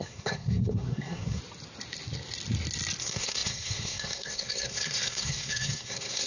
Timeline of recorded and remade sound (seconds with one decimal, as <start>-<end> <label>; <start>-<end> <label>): 0.0-1.4 remade; 1.4-3.0 recorded; 3.0-6.3 remade